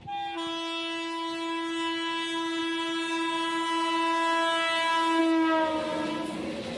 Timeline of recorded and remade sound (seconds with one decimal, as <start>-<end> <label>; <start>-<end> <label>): 0.0-6.8 recorded